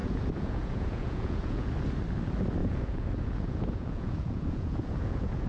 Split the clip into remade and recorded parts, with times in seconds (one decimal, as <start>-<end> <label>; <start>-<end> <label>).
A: 0.0-1.7 remade; 1.7-2.6 recorded; 2.6-5.5 remade